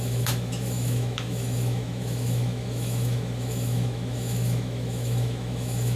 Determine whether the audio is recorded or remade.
remade